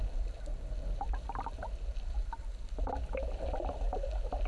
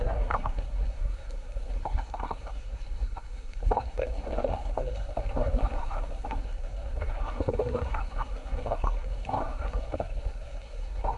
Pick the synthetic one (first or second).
second